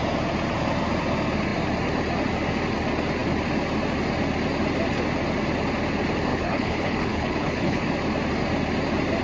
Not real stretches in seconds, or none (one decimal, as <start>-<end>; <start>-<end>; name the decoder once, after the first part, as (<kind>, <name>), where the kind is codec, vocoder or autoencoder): 6.3-7.9 (codec, HILCodec)